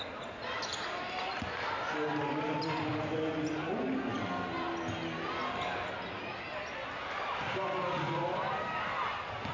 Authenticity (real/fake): real